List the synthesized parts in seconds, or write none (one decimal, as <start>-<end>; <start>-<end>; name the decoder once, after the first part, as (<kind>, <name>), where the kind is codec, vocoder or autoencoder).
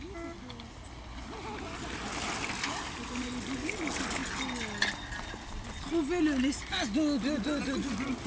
none